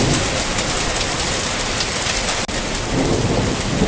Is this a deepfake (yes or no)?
no